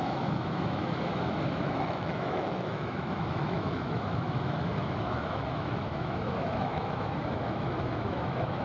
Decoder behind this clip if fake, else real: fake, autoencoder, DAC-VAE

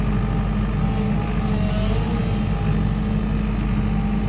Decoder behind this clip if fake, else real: real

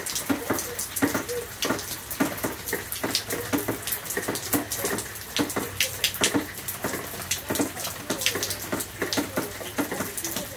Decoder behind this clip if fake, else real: real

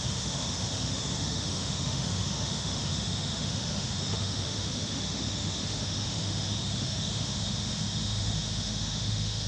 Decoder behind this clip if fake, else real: fake, autoencoder, DAC-VAE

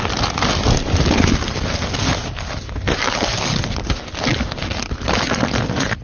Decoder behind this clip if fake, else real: real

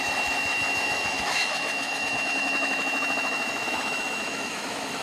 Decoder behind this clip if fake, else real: fake, autoencoder, DAC-VAE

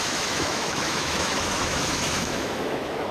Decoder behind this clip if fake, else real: fake, autoencoder, DAC-VAE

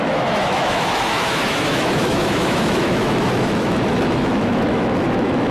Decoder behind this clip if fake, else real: fake, autoencoder, DAC-VAE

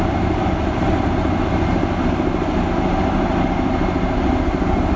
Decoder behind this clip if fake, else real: real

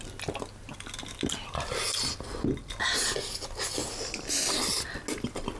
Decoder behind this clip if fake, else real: real